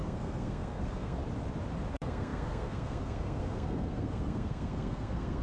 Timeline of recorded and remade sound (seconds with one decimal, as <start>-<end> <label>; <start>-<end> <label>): 0.0-1.2 remade; 1.2-1.9 recorded; 1.9-5.4 remade

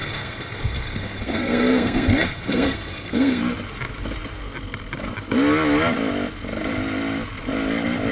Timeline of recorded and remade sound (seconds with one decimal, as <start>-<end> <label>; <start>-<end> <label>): 0.0-3.4 remade; 3.4-8.1 recorded